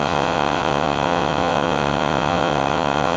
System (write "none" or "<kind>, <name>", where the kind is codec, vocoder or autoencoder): vocoder, WaveNeXt